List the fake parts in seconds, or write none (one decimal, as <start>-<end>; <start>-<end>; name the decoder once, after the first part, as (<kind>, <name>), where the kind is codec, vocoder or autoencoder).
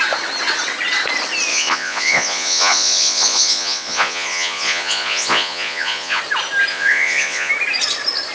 1.5-6.2 (vocoder, Vocos); 6.7-7.5